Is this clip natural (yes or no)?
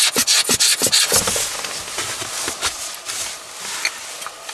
yes